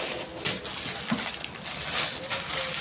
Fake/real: real